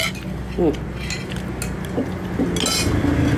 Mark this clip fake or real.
real